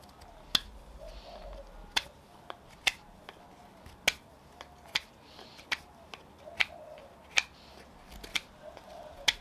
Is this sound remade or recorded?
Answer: recorded